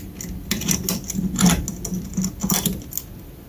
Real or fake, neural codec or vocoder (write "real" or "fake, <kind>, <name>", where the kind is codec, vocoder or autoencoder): real